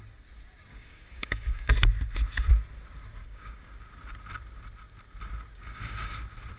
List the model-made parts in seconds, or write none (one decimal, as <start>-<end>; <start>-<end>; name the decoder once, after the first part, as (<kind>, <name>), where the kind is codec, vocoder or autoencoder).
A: 0.7-1.7 (codec, DAC); 3.2-3.8; 5.5-6.1